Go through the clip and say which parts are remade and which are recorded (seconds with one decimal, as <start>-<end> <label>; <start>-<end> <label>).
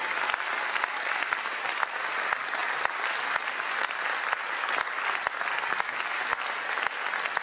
0.0-7.4 recorded